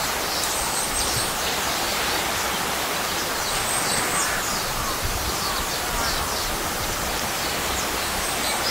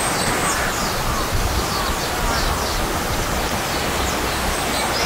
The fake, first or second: first